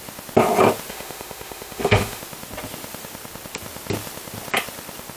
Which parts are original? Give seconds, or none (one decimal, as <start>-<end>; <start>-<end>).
0.0-0.9; 2.2-5.2